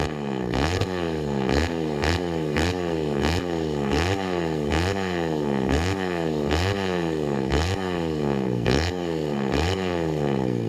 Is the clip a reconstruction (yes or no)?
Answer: yes